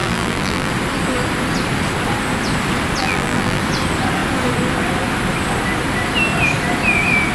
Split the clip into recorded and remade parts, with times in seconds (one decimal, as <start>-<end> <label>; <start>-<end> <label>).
0.0-0.7 remade; 0.7-3.0 recorded; 3.0-3.6 remade; 3.6-7.3 recorded